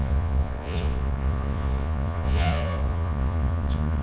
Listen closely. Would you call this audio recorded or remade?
remade